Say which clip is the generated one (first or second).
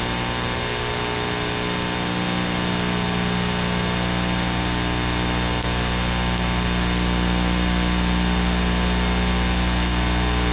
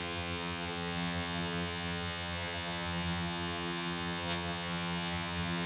second